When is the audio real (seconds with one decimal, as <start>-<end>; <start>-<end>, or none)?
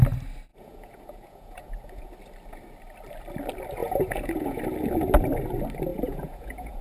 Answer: 0.0-0.5; 2.1-3.8; 4.6-5.9